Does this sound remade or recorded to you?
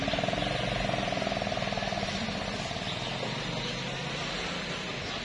recorded